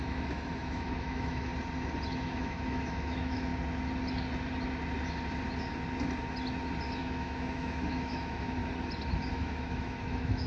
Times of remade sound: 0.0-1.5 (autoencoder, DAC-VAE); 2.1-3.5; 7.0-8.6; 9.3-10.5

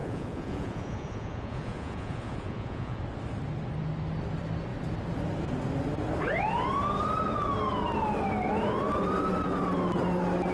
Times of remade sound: 0.0-3.0 (vocoder, Vocos)